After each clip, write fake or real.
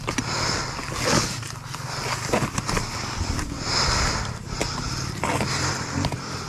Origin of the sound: real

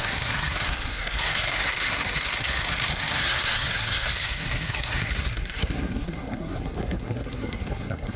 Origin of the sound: fake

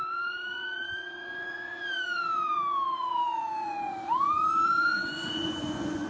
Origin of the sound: fake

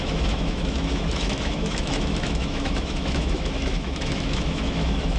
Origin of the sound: fake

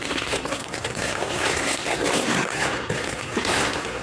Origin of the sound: fake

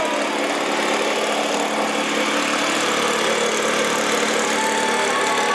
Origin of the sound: real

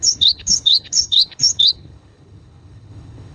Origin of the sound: fake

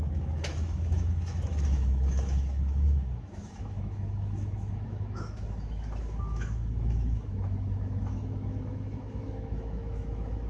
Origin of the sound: fake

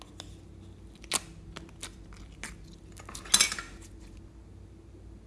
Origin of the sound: real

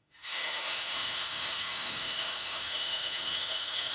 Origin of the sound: fake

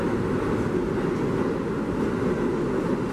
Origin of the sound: real